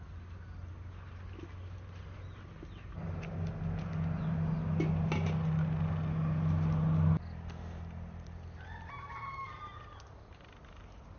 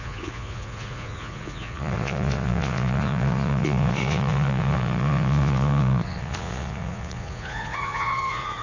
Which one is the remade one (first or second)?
second